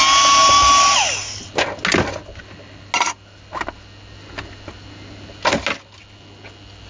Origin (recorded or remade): recorded